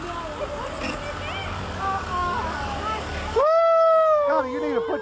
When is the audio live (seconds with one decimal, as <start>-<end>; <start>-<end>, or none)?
0.0-1.4; 4.4-5.0